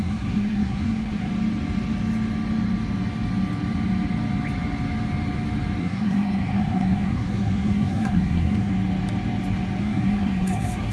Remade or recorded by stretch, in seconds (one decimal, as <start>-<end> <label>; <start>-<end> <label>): 0.0-1.3 remade; 1.3-5.8 recorded; 5.8-8.7 remade; 8.7-9.8 recorded; 9.8-10.9 remade